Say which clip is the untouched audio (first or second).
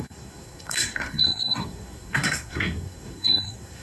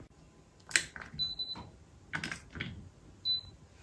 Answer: second